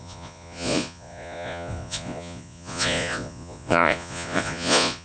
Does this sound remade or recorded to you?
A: remade